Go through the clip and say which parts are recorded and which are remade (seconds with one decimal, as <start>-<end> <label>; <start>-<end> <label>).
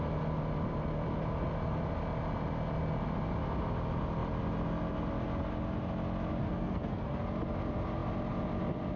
0.0-6.4 recorded; 6.4-7.2 remade; 7.2-9.0 recorded